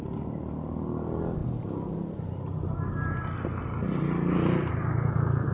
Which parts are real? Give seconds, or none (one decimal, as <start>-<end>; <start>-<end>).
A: 0.0-5.5